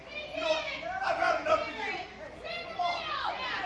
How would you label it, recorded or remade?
recorded